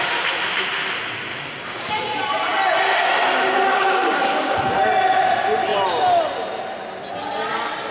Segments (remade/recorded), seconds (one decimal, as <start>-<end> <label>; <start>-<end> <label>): 0.0-1.3 recorded; 1.3-1.9 remade; 1.9-3.7 recorded; 3.7-4.6 remade; 4.6-7.9 recorded